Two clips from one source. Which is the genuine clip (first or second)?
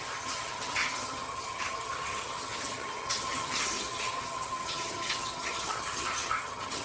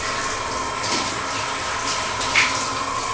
second